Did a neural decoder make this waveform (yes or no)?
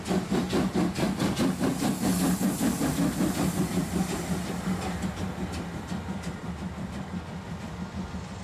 no